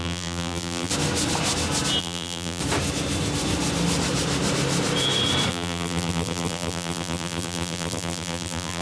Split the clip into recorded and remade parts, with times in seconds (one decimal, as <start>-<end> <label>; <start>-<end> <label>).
0.0-0.9 remade; 0.9-2.0 recorded; 2.0-2.6 remade; 2.6-5.5 recorded; 5.5-8.8 remade

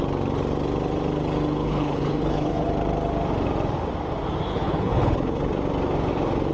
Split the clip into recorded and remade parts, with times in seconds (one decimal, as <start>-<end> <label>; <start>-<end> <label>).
0.0-1.6 recorded; 1.6-2.7 remade; 2.7-4.5 recorded; 4.5-5.5 remade; 5.5-6.5 recorded

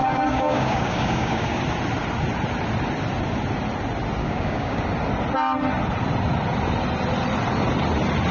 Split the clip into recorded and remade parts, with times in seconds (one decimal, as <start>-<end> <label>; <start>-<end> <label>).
0.0-1.6 remade; 1.6-4.2 recorded; 4.2-4.8 remade; 4.8-8.3 recorded

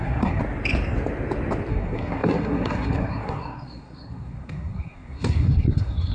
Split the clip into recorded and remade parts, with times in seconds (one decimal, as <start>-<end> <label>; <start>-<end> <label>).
0.0-0.4 remade; 0.4-1.7 recorded; 1.7-6.1 remade

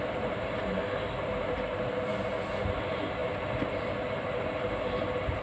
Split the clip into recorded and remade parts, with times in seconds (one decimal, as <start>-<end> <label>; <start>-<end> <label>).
0.0-5.4 recorded

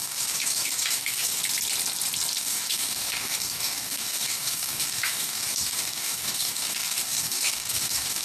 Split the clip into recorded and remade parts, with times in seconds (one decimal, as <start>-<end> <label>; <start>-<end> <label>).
0.0-1.4 remade; 1.4-2.4 recorded; 2.4-8.2 remade

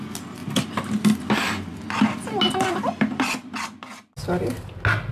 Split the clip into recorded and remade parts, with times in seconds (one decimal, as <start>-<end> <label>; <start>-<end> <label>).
0.0-5.1 recorded